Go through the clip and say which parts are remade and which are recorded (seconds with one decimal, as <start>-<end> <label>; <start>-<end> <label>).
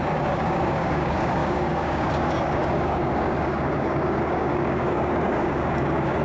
0.0-6.2 remade